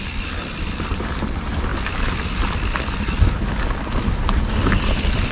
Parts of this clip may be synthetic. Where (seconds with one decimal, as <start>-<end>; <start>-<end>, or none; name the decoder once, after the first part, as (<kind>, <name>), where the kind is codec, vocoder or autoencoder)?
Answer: none